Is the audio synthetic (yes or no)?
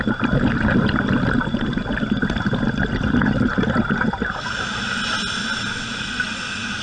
no